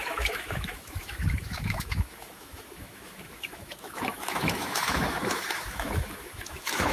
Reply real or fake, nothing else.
fake